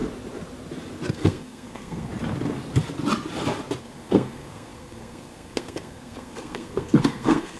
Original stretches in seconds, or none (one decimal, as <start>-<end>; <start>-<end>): 0.0-1.1; 2.1-3.8